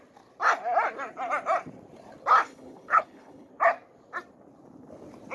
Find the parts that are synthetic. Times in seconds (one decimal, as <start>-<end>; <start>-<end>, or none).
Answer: 2.4-3.5